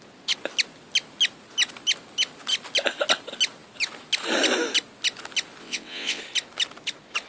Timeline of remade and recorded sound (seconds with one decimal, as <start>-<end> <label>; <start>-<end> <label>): 0.0-5.6 recorded; 5.6-6.2 remade; 6.2-7.3 recorded